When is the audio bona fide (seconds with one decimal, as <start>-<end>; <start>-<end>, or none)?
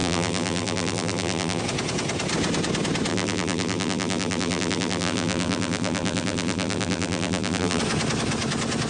1.6-3.1; 7.8-8.9